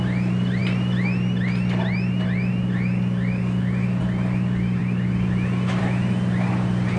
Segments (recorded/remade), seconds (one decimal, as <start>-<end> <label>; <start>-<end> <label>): 0.0-7.0 recorded